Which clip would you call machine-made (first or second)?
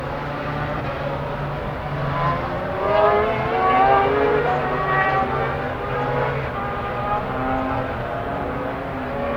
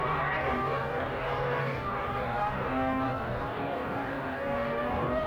second